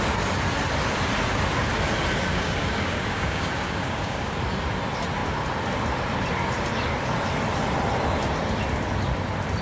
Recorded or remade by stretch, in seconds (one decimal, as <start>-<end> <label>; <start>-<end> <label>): 0.0-2.3 recorded; 2.3-4.4 remade; 4.4-9.6 recorded